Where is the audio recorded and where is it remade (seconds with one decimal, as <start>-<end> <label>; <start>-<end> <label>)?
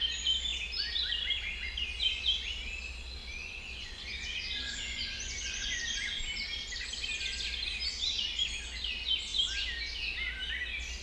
0.0-3.2 recorded; 3.2-6.2 remade; 6.2-11.0 recorded